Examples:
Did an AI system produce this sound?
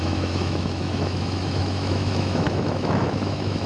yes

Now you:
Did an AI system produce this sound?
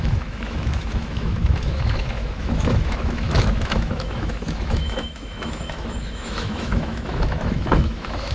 yes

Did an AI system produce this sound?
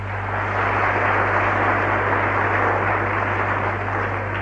no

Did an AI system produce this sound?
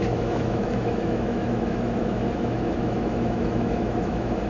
yes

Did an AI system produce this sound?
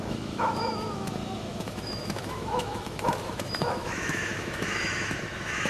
yes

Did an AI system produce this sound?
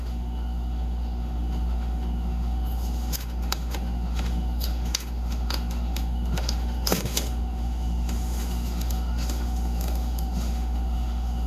yes